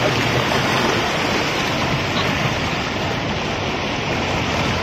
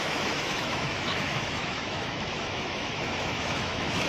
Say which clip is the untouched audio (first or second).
first